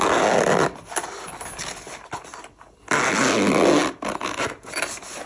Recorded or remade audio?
recorded